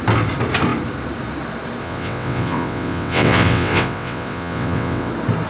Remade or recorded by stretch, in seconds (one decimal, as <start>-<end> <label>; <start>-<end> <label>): 0.0-1.8 recorded; 1.8-5.1 remade; 5.1-5.5 recorded